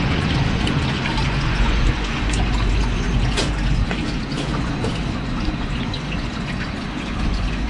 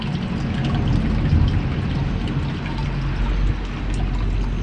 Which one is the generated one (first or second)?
first